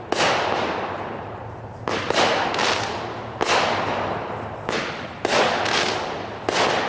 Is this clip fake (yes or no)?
no